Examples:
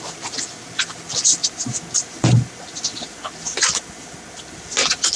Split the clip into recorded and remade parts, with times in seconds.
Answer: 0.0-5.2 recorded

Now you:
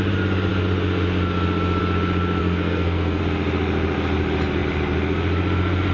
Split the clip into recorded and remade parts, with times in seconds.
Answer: 0.0-2.4 recorded; 2.4-3.2 remade; 3.2-5.9 recorded

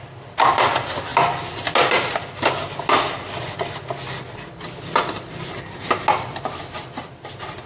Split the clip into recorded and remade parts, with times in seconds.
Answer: 0.0-7.7 recorded